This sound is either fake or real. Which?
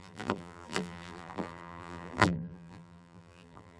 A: fake